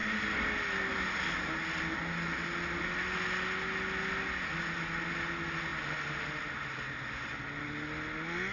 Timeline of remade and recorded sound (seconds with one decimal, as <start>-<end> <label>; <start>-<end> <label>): 0.0-8.5 recorded

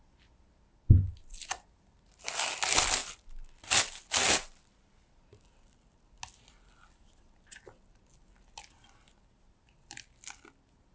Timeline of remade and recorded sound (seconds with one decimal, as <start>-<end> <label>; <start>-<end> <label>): 0.0-10.9 recorded

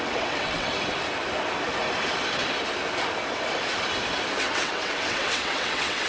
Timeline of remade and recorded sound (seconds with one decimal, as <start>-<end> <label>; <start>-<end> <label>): 0.0-0.7 remade; 0.7-4.4 recorded; 4.4-6.1 remade